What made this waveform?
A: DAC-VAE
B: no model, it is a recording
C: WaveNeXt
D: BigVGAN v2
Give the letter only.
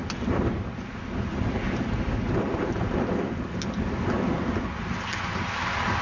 B